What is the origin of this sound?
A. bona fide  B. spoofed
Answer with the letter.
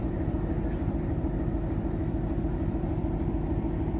A